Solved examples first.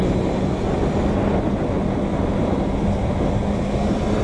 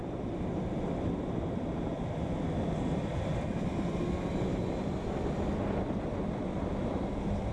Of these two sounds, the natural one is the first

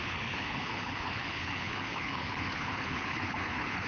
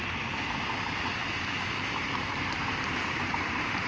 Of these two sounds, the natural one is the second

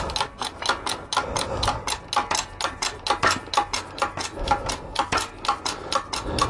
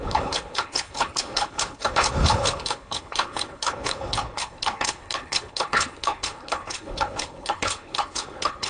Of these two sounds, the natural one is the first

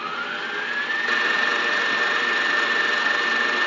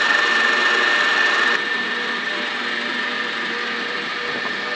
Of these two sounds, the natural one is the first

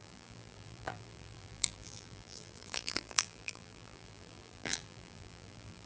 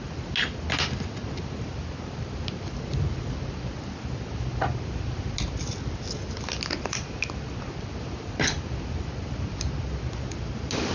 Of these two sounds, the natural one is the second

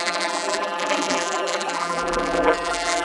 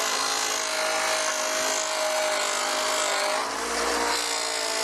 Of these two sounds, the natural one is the second